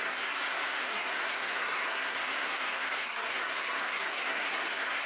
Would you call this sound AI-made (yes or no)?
yes